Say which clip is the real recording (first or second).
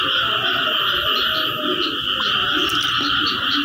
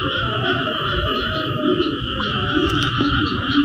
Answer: first